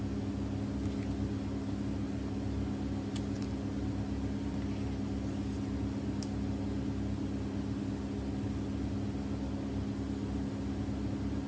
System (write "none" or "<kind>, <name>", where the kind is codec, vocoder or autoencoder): none